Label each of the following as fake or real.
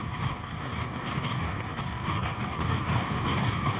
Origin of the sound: fake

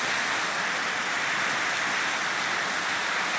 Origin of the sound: real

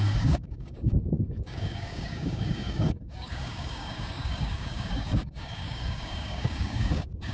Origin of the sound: fake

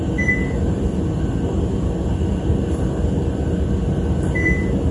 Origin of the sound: real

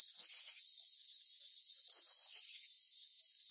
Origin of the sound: fake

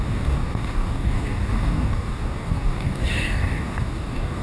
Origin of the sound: fake